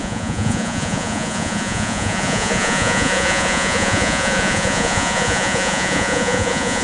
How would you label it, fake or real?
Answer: fake